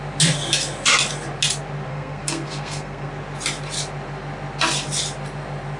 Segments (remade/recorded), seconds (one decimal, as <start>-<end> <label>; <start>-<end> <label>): 0.0-1.9 recorded; 1.9-3.1 remade; 3.1-5.8 recorded